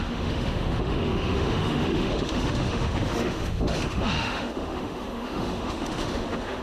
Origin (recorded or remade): remade